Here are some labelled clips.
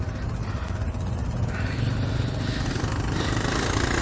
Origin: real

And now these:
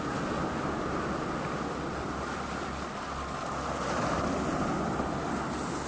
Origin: real